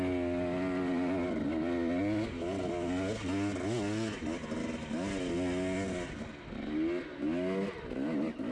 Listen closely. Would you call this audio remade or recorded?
recorded